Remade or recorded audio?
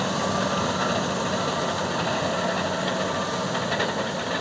recorded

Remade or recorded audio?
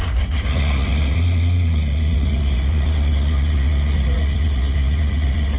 remade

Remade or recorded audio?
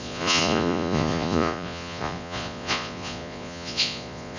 remade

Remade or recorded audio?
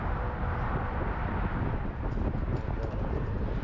recorded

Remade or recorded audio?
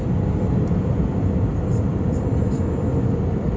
recorded